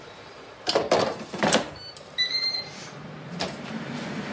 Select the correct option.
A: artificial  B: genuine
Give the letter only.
A